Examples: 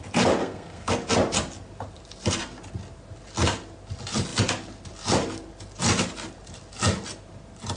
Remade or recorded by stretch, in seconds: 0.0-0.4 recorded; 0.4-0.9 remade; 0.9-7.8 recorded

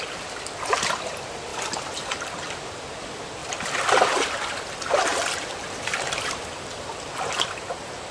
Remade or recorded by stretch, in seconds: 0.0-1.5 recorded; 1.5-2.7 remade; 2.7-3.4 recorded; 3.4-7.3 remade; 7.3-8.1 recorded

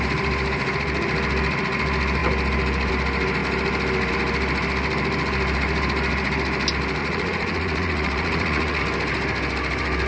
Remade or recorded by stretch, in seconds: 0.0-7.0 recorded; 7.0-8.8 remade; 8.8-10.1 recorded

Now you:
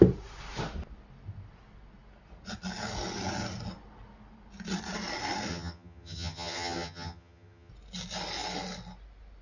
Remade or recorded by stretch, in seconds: 0.0-5.5 recorded; 5.5-7.7 remade; 7.7-9.4 recorded